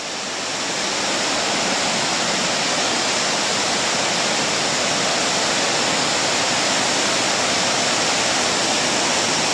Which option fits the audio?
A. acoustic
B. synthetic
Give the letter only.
A